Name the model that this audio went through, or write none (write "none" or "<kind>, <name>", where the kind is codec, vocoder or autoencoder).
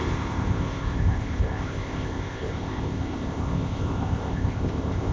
codec, ZipCodec